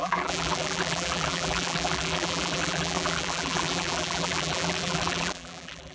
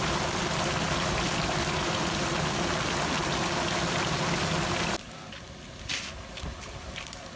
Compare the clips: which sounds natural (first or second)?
second